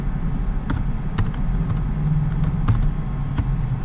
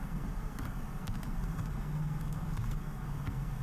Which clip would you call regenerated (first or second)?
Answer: second